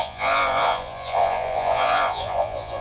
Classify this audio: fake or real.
fake